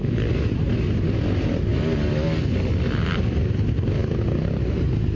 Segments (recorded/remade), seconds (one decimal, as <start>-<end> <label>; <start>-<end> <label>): 0.0-5.2 recorded